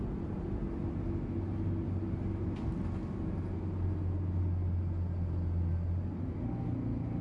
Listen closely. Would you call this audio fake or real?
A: real